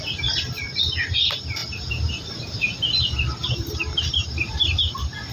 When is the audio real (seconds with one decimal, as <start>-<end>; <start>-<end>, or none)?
0.0-1.6; 4.8-5.3